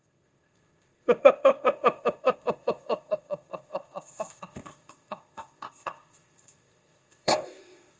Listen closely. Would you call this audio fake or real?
fake